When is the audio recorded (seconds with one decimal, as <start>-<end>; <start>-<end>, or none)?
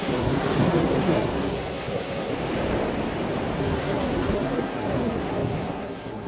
2.3-3.6